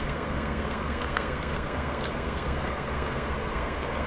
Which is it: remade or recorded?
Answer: remade